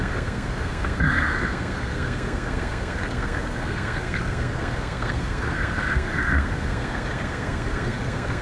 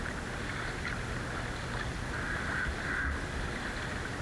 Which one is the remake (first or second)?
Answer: first